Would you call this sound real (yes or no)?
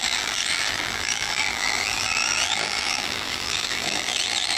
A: no